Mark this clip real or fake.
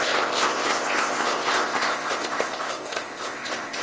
fake